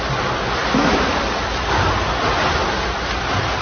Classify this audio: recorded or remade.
recorded